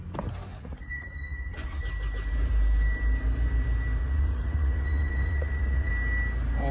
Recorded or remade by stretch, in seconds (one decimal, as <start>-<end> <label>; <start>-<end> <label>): 0.0-0.5 recorded; 0.5-1.8 remade; 1.8-4.0 recorded; 4.0-5.9 remade; 5.9-6.7 recorded

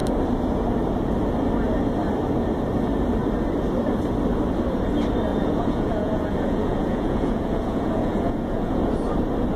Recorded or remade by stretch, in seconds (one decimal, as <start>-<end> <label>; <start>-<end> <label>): 0.0-5.3 recorded; 5.3-8.8 remade; 8.8-9.6 recorded

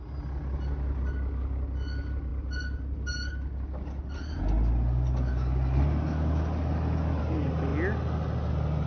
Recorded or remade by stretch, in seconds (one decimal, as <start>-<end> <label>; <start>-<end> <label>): 0.0-8.9 recorded

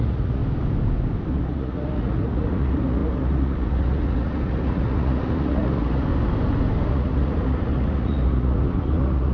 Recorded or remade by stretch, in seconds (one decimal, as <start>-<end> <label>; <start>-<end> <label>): 0.0-0.4 remade; 0.4-1.3 recorded; 1.3-6.1 remade; 6.1-6.9 recorded; 6.9-9.3 remade

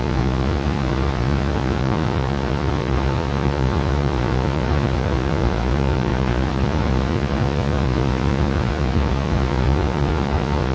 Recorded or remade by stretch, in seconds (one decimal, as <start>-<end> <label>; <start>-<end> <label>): 0.0-10.7 remade

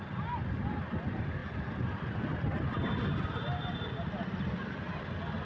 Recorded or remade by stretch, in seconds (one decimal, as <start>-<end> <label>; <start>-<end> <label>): 0.0-5.5 recorded